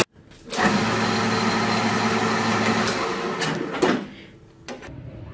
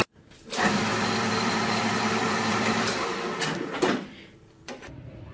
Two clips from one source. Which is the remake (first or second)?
second